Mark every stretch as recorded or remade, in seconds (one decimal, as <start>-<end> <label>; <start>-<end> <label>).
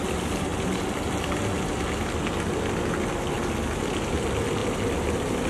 0.0-5.5 recorded